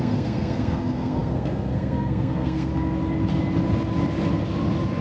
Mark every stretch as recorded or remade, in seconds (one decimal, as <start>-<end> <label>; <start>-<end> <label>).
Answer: 0.0-2.7 remade; 2.7-5.0 recorded